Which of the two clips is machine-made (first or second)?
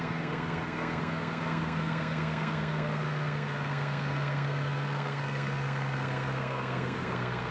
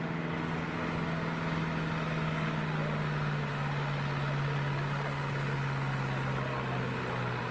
first